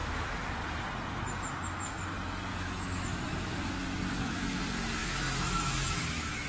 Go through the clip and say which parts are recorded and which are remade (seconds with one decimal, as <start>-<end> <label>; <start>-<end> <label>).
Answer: 0.0-2.5 recorded; 2.5-3.7 remade; 3.7-5.0 recorded; 5.0-6.5 remade